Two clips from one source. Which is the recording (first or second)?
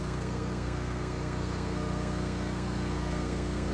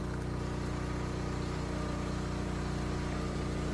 second